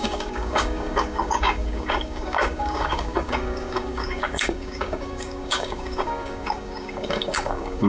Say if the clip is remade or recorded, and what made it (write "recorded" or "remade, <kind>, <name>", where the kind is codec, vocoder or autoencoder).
remade, codec, DAC